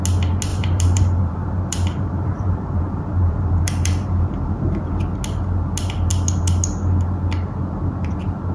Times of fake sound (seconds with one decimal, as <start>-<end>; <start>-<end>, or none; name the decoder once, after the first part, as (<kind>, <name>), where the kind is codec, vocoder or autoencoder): 0.5-4.8 (vocoder, BigVGAN v2)